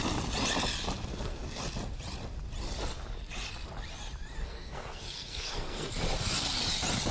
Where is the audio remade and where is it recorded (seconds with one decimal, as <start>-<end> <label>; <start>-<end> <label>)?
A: 0.0-1.1 recorded; 1.1-1.6 remade; 1.6-4.4 recorded; 4.4-5.9 remade; 5.9-7.1 recorded